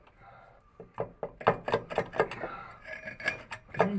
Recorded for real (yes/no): yes